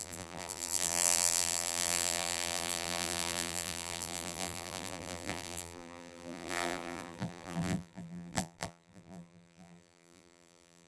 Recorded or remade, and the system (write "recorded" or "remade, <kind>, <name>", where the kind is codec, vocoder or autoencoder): remade, vocoder, BigVGAN v2